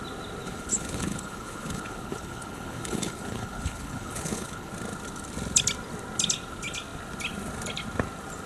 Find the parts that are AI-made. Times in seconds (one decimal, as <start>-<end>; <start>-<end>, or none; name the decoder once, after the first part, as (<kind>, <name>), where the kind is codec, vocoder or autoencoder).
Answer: 0.4-4.7 (codec, HILCodec)